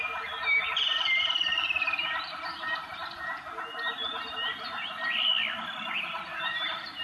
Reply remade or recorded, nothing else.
recorded